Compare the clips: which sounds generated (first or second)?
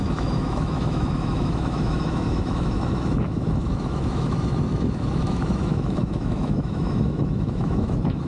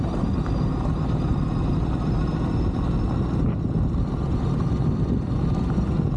first